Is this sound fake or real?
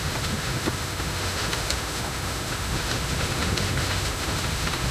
fake